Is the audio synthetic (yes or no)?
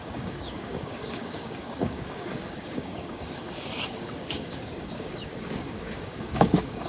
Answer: yes